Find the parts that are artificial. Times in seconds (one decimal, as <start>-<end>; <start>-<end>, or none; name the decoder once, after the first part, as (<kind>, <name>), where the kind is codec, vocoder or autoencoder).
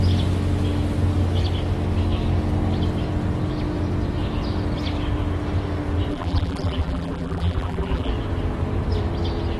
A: 6.1-8.1 (vocoder, BigVGAN v2)